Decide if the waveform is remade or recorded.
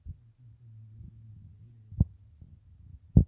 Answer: recorded